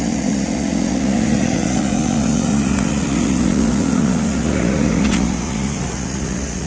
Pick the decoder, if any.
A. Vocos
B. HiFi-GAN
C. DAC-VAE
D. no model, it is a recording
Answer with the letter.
A